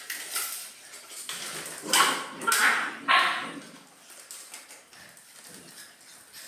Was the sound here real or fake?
real